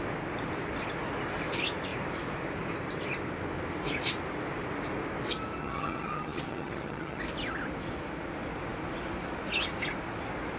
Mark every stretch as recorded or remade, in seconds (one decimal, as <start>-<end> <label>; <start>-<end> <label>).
0.0-5.6 recorded; 5.6-7.2 remade; 7.2-10.6 recorded